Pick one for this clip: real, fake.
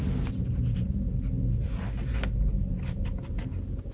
real